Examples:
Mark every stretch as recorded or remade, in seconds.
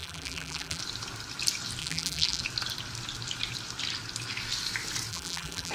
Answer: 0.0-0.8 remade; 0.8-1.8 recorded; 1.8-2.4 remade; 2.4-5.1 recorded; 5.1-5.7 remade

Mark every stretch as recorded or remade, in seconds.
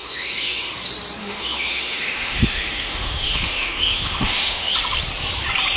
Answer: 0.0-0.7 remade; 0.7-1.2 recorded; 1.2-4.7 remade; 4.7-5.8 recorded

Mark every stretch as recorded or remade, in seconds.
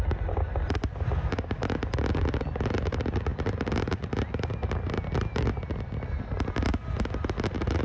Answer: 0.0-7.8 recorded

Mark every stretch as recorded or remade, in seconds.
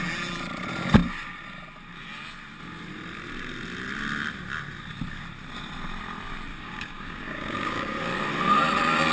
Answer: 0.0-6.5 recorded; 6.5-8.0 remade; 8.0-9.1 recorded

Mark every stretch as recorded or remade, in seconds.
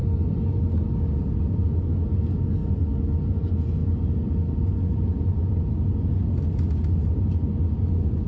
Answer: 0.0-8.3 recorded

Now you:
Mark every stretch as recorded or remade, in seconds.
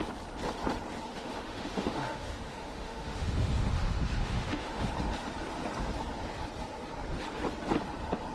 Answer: 0.0-1.1 recorded; 1.1-4.9 remade; 4.9-8.3 recorded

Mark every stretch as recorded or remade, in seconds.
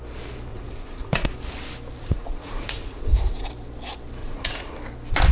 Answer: 0.0-0.5 recorded; 0.5-1.3 remade; 1.3-2.0 recorded; 2.0-3.5 remade; 3.5-4.2 recorded; 4.2-4.7 remade; 4.7-5.3 recorded